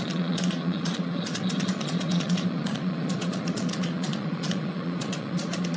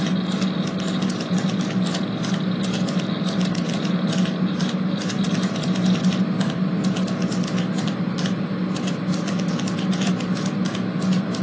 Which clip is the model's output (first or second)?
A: first